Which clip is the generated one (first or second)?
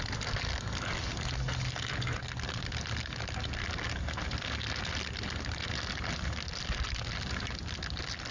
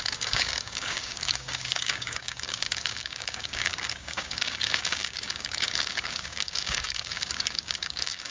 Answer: second